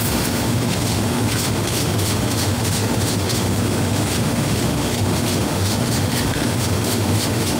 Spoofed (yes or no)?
yes